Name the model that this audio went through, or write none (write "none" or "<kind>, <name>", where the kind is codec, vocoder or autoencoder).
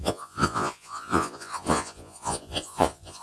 vocoder, Vocos